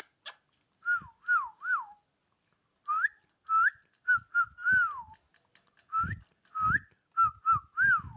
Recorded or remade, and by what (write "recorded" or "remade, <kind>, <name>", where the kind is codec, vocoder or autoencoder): recorded